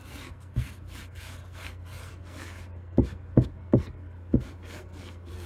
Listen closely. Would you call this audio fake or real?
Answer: fake